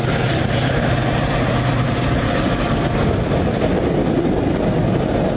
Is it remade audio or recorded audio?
recorded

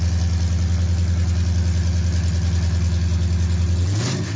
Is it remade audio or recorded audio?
recorded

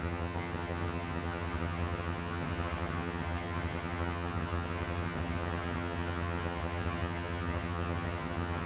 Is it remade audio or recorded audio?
remade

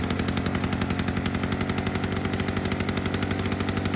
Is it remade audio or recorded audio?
recorded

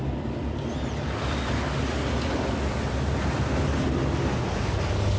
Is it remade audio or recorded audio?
recorded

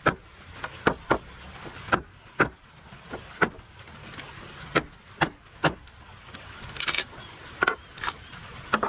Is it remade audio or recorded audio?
recorded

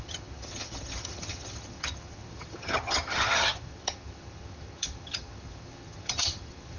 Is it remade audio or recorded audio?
remade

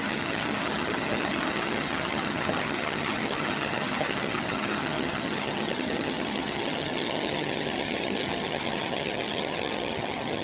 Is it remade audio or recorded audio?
remade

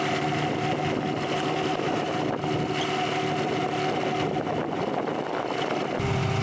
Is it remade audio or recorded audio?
recorded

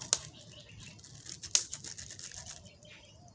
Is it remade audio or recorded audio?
recorded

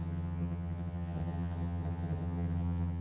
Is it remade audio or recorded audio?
remade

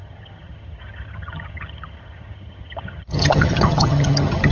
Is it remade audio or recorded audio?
remade